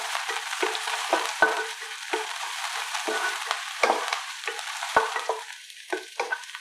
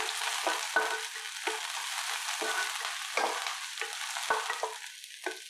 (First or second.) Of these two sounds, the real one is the second